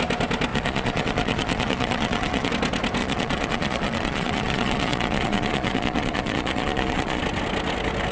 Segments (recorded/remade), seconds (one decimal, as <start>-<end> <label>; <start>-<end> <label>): 0.0-0.5 recorded; 0.5-2.5 remade; 2.5-3.0 recorded; 3.0-7.2 remade; 7.2-8.1 recorded